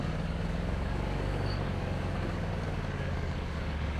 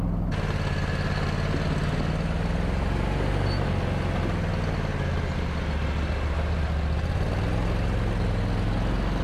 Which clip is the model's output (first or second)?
first